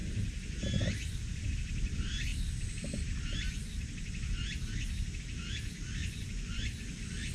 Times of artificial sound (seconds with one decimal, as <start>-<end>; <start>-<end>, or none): 6.0-6.7